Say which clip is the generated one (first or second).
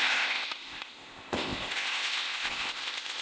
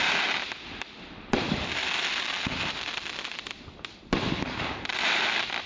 first